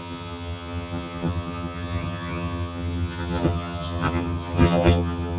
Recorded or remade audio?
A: remade